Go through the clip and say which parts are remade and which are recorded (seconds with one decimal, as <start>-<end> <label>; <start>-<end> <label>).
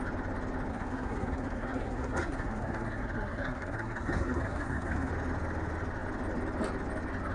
0.0-0.7 recorded; 0.7-5.1 remade; 5.1-7.3 recorded